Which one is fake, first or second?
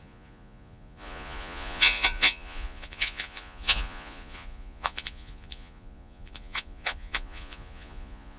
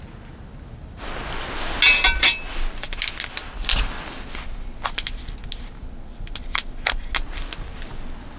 first